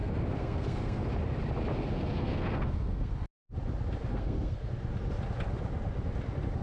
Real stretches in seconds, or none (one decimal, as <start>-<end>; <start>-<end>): 1.0-1.7; 3.1-4.1; 4.7-6.6